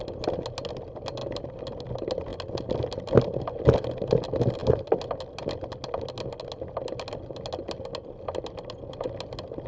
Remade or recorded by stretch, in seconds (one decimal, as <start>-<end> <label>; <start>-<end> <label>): 0.0-9.7 recorded